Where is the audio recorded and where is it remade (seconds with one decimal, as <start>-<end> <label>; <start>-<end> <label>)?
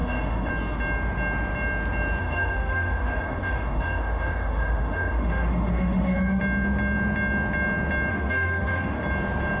0.0-0.5 remade; 0.5-2.2 recorded; 2.2-6.4 remade; 6.4-8.1 recorded; 8.1-9.0 remade; 9.0-9.6 recorded